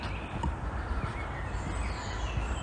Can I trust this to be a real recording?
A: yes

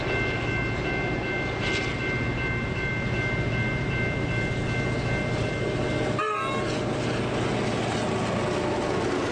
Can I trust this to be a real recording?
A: yes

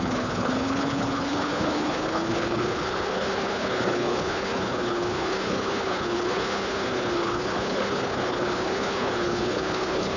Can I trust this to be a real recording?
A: no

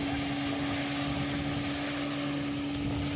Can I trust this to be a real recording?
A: yes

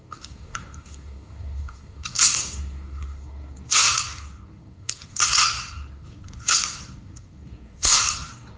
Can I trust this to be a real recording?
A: no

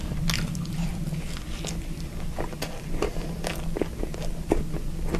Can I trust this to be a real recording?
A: yes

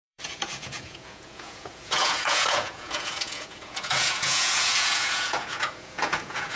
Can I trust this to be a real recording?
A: no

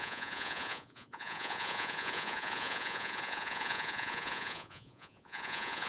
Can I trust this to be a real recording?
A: no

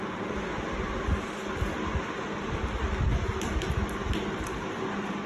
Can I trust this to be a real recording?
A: yes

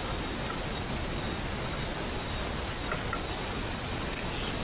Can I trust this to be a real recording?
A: yes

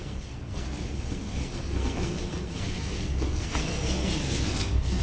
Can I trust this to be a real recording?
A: no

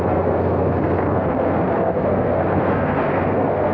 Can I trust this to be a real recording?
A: no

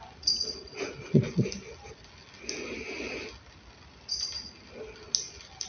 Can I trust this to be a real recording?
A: yes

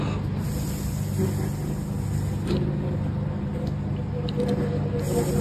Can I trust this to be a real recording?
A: yes